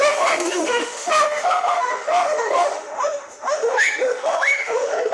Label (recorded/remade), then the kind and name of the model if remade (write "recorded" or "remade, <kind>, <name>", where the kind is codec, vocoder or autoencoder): remade, autoencoder, DAC-VAE